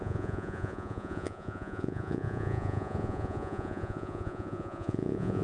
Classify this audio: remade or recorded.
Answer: remade